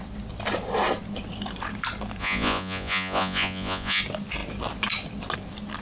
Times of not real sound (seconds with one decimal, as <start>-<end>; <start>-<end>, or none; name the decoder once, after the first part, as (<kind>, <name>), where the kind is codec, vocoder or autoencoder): 2.2-4.0 (vocoder, Vocos)